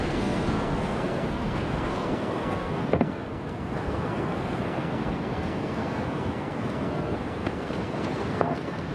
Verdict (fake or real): fake